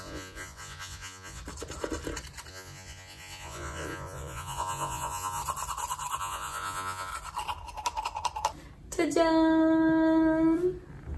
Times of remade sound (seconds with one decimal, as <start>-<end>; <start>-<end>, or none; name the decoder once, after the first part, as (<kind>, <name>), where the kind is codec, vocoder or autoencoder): 0.0-1.4 (vocoder, Vocos); 2.5-5.4; 6.2-7.1